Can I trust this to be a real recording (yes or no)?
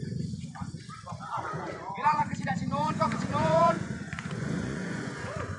no